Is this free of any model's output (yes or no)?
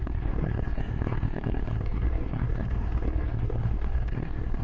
no